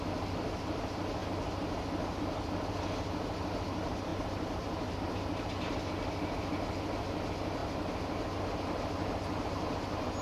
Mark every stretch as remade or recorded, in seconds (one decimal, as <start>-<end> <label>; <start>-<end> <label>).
0.0-4.1 recorded; 4.1-5.1 remade; 5.1-10.2 recorded